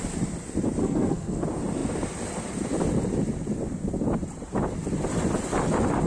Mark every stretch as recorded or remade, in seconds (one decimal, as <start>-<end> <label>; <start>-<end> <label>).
0.0-0.8 recorded; 0.8-1.4 remade; 1.4-6.1 recorded